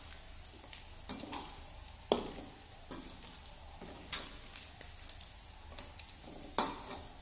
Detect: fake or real real